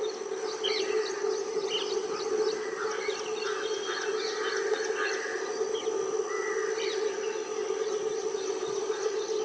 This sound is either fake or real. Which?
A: real